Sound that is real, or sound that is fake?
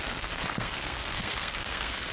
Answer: fake